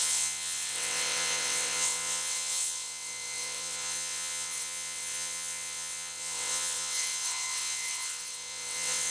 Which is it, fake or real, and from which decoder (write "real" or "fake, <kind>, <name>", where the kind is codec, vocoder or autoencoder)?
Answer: fake, vocoder, WaveNeXt